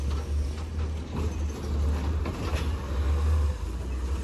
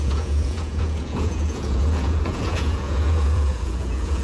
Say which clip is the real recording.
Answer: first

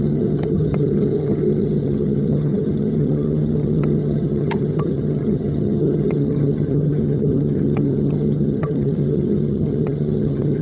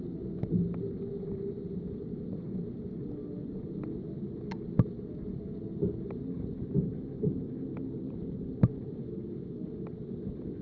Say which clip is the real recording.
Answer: second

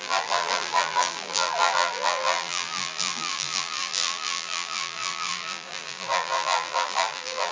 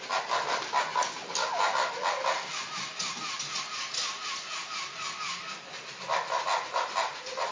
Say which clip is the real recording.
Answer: second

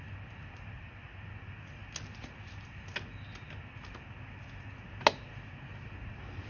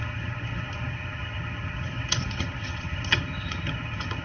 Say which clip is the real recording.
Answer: first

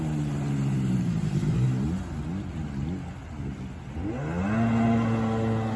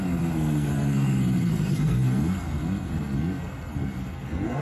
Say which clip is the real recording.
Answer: first